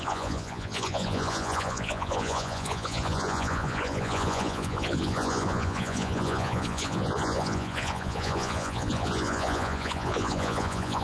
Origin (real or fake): fake